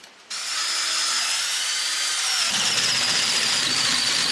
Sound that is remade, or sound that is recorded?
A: recorded